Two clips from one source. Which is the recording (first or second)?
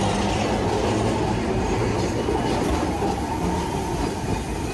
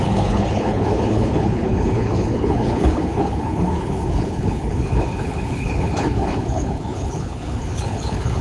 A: first